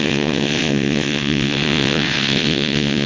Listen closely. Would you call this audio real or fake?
fake